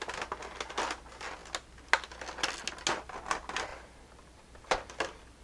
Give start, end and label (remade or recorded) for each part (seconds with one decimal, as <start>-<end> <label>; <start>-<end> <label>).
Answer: 0.0-3.7 recorded; 3.7-5.4 remade